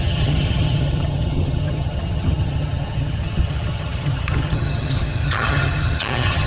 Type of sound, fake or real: fake